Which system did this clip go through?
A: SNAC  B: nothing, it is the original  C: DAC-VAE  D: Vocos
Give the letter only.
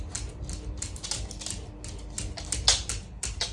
B